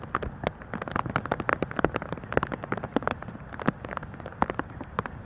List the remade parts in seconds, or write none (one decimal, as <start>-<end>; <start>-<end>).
none